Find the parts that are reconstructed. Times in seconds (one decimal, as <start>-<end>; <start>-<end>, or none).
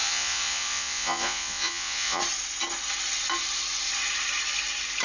0.0-2.2